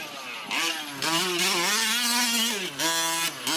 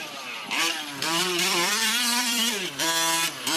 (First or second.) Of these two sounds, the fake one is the second